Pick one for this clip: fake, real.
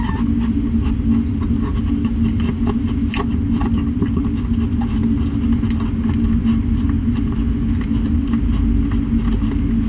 real